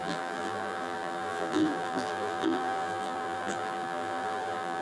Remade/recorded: remade